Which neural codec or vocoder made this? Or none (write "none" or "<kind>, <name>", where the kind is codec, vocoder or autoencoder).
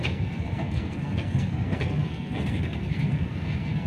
codec, SNAC